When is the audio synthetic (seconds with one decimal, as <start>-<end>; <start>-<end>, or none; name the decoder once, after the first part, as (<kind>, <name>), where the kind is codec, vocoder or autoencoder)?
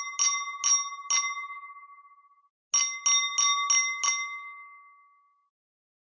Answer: none